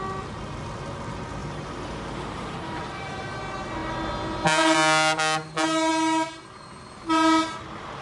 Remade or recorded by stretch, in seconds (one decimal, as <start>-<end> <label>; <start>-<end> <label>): 0.0-1.4 recorded; 1.4-3.2 remade; 3.2-8.0 recorded